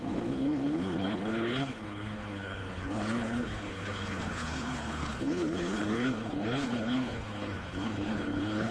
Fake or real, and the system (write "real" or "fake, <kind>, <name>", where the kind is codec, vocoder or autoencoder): fake, codec, HILCodec